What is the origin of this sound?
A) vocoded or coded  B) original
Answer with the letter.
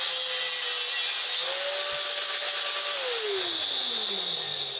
B